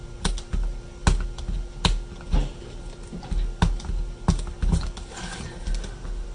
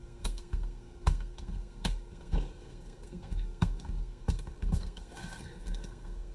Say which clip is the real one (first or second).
first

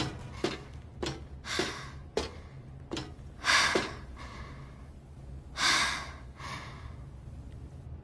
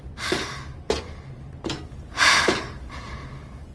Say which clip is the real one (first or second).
first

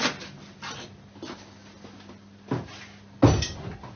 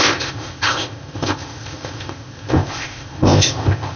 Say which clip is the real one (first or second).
first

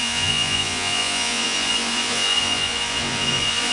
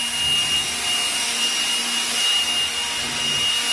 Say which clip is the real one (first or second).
second